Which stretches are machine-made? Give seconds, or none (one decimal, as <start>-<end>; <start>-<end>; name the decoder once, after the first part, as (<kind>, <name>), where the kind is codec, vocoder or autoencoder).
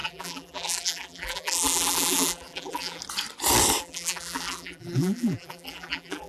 0.0-3.0 (vocoder, BigVGAN v2); 3.8-6.3